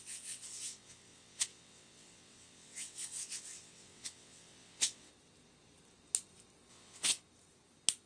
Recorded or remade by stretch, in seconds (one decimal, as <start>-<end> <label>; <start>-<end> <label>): 0.0-5.1 remade; 5.1-6.7 recorded; 6.7-7.2 remade; 7.2-8.1 recorded